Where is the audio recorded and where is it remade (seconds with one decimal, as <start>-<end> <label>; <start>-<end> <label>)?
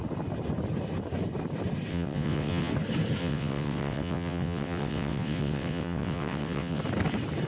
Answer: 0.0-1.9 recorded; 1.9-2.7 remade; 2.7-3.2 recorded; 3.2-6.8 remade; 6.8-7.5 recorded